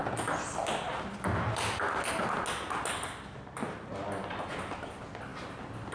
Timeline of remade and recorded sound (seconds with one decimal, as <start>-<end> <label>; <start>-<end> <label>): 0.0-5.9 recorded